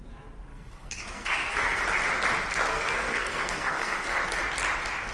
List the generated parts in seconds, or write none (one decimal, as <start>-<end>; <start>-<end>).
0.5-1.8; 2.7-4.2